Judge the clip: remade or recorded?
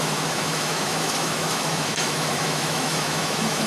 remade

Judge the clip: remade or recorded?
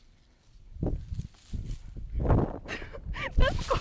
remade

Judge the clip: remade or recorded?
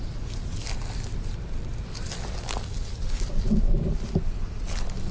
recorded